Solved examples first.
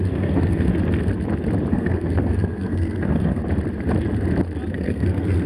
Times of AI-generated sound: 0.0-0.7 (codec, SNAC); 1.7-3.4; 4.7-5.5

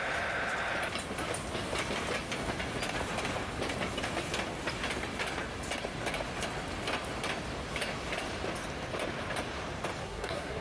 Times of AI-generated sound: 10.0-10.6 (codec, SNAC)

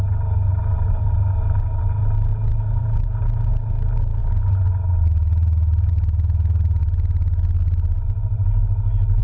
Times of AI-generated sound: 2.3-3.5 (vocoder, Vocos)